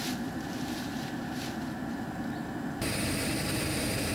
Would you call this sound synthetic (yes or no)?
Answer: yes